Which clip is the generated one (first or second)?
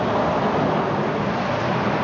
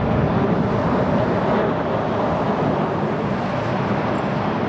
second